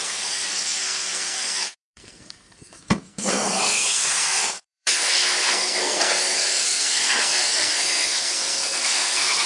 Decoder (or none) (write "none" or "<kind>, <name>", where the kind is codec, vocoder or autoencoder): codec, SNAC